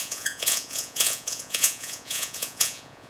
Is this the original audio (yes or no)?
no